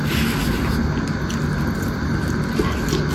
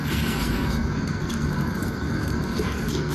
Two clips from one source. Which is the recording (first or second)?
first